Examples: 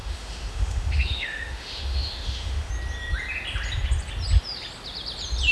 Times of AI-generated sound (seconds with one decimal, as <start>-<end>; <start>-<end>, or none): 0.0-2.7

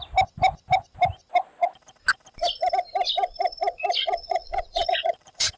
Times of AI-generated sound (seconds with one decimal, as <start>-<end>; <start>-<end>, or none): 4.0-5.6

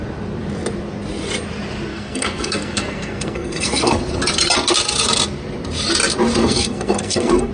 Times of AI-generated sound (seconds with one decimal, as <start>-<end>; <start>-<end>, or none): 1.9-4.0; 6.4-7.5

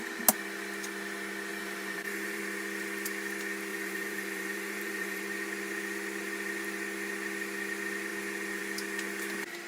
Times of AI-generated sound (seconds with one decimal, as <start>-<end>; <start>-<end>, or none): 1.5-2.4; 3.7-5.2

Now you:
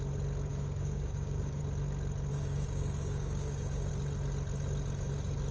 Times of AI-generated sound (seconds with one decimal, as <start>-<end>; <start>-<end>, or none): 0.5-1.6; 2.3-3.9

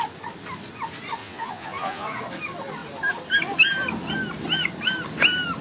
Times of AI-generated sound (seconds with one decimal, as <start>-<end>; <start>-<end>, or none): 1.2-2.2